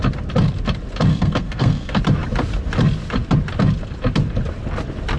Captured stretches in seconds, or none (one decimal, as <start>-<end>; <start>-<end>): 0.0-1.1; 2.0-5.2